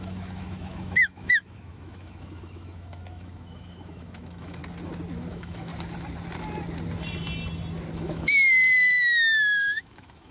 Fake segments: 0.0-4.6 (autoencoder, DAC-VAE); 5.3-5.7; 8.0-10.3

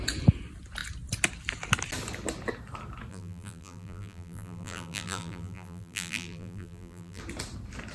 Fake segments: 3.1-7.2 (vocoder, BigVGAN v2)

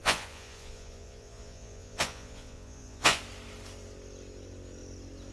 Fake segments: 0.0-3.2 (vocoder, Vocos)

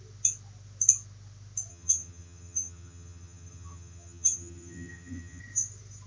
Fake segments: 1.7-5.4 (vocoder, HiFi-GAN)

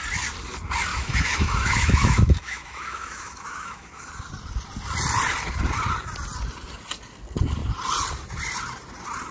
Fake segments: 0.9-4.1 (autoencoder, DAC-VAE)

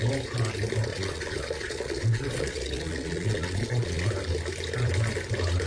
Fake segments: 0.9-4.1 (vocoder, Vocos)